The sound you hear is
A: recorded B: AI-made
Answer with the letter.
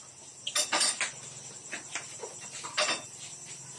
A